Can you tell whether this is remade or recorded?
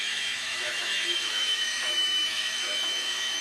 remade